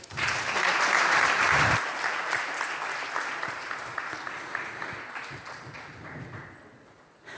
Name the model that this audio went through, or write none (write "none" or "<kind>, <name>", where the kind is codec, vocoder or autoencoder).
none